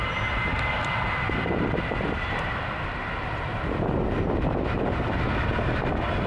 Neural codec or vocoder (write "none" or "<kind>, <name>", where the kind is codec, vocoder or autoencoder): none